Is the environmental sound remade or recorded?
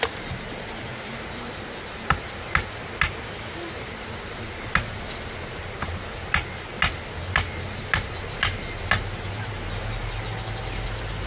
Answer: recorded